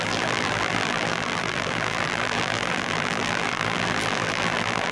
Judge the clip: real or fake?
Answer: fake